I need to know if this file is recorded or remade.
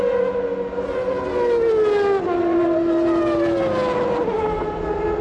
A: recorded